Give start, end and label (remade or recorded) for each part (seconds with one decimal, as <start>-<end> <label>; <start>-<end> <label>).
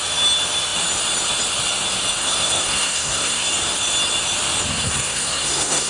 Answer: 0.0-2.2 recorded; 2.2-3.5 remade; 3.5-4.7 recorded; 4.7-5.9 remade